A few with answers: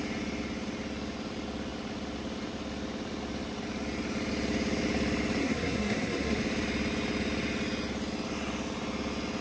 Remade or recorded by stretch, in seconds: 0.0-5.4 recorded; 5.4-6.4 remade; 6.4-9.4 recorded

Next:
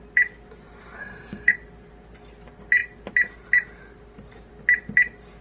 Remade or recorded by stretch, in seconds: 0.0-1.0 recorded; 1.0-1.5 remade; 1.5-5.4 recorded

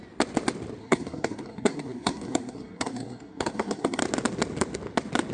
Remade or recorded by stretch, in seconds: 0.0-0.8 recorded; 0.8-4.0 remade; 4.0-5.3 recorded

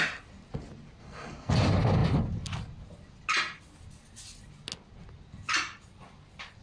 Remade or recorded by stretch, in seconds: 0.0-1.0 recorded; 1.0-1.5 remade; 1.5-6.6 recorded

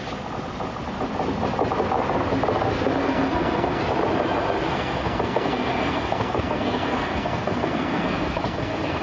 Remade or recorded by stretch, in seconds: 0.0-3.0 recorded; 3.0-3.8 remade; 3.8-4.7 recorded; 4.7-9.0 remade